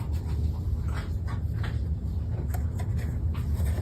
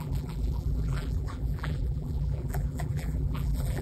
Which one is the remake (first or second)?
second